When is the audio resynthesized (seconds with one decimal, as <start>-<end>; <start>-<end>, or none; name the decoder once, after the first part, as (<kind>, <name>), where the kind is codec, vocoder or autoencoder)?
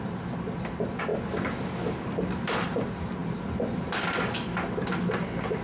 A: none